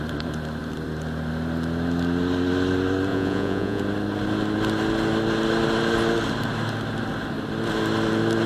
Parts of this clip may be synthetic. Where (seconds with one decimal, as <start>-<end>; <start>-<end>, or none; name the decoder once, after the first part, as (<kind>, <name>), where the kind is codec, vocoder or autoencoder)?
3.1-3.8 (vocoder, Vocos)